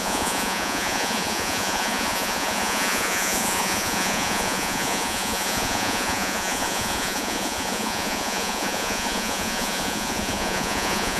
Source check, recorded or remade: remade